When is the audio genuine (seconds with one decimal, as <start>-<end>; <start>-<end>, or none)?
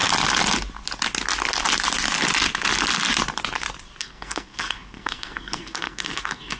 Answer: 0.0-4.0